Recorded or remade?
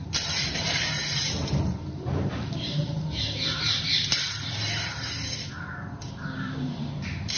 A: remade